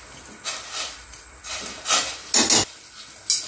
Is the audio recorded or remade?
recorded